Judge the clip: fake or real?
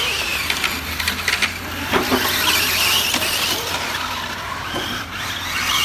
real